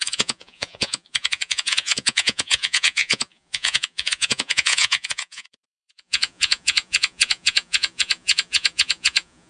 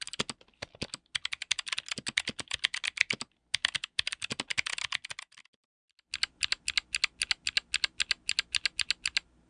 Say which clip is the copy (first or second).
first